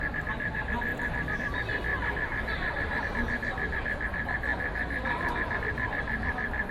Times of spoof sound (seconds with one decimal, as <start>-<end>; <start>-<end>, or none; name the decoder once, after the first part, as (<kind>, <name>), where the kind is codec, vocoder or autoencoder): none